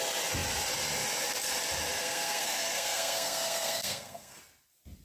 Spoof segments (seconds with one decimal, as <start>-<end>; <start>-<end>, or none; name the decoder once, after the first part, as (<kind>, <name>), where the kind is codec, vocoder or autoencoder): 2.0-4.4 (codec, SNAC)